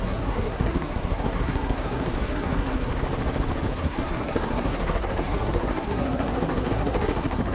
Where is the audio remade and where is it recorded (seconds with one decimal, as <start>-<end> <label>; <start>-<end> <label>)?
0.0-2.9 remade; 2.9-3.7 recorded; 3.7-7.5 remade